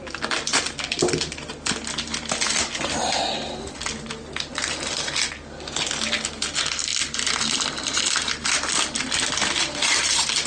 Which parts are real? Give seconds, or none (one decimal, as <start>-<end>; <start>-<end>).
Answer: 0.0-10.5